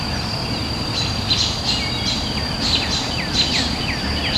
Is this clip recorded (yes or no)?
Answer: yes